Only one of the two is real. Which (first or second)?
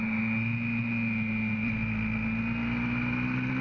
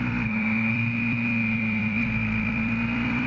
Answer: first